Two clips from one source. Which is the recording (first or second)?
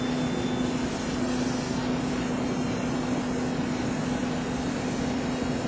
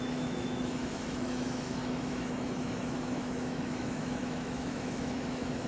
first